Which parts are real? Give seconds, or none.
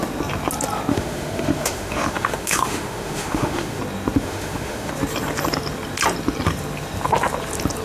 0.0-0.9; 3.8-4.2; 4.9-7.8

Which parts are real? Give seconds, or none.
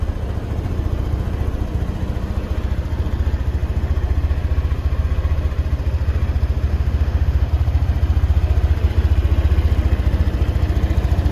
0.0-6.7; 7.5-11.3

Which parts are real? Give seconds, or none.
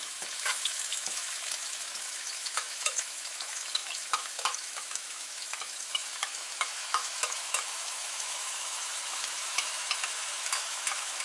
none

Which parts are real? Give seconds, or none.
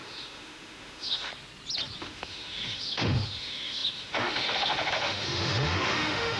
1.3-2.0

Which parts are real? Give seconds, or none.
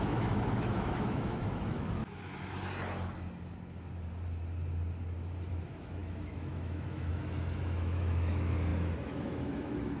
2.0-5.5